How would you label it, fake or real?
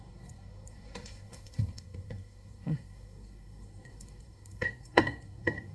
fake